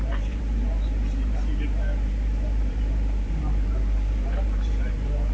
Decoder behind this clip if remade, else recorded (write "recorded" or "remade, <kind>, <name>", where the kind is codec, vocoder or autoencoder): remade, vocoder, BigVGAN v2